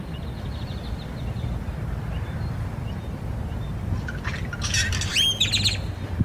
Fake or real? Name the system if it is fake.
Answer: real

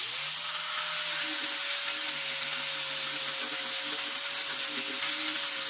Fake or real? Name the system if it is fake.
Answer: real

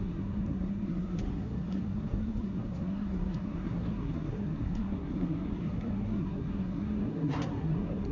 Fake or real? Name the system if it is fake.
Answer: fake, codec, SNAC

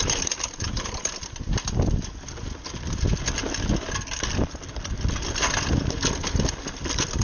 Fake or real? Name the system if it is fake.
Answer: real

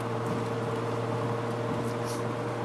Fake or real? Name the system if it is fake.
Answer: real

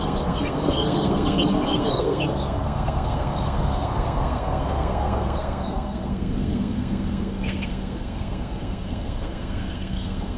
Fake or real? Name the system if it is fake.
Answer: fake, codec, SNAC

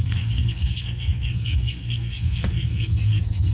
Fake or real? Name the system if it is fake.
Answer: fake, codec, SNAC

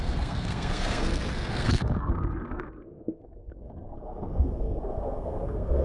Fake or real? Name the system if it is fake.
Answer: fake, codec, SNAC